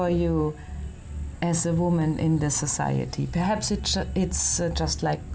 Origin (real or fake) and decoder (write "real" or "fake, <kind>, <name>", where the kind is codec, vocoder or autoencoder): real